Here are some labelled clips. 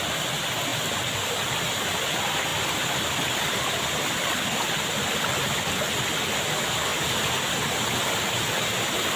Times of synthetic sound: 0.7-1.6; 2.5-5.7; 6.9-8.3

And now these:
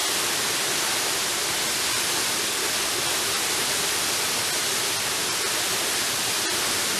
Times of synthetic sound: none